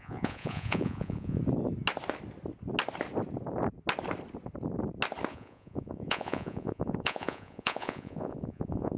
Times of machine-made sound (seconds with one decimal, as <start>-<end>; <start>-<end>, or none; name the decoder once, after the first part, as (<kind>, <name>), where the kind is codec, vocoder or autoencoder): 0.0-1.4 (vocoder, Vocos); 5.3-9.0